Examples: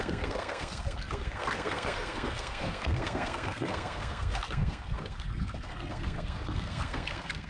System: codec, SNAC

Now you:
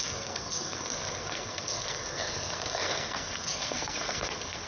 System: codec, SNAC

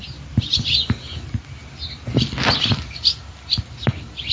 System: none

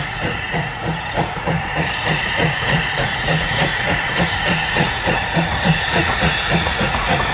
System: vocoder, Vocos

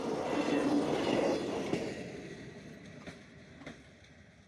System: none